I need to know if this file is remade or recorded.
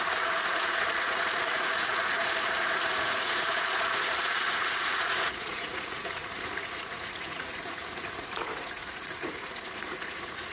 remade